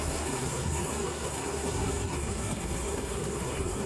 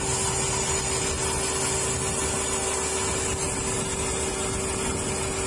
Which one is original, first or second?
second